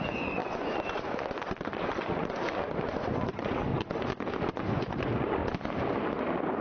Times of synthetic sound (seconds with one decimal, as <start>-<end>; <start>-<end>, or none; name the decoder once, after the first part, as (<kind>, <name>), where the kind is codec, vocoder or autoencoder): 0.0-3.7 (vocoder, Vocos); 4.6-5.4